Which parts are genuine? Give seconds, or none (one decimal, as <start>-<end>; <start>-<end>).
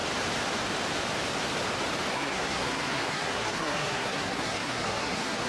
0.0-2.1